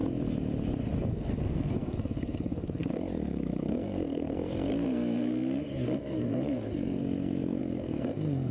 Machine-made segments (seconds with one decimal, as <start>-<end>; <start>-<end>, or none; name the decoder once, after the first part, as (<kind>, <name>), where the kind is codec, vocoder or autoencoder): 1.1-8.5 (codec, SNAC)